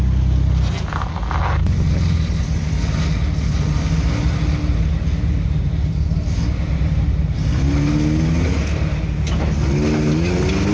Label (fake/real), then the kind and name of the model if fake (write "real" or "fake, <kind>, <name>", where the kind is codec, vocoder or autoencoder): real